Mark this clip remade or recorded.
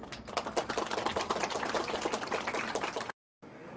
recorded